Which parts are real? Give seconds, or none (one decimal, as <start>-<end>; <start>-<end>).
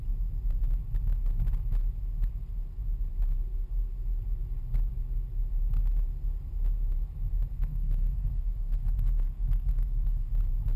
0.0-7.5; 10.3-10.8